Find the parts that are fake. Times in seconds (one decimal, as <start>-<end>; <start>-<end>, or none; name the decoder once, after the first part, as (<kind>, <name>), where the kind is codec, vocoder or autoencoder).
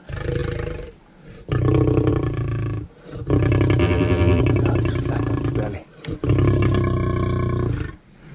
3.8-4.4 (vocoder, BigVGAN v2)